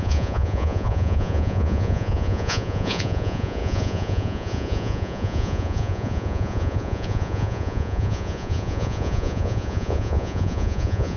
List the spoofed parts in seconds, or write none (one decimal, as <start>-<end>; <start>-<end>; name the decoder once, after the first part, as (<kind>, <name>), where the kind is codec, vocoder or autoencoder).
0.0-11.2 (vocoder, Vocos)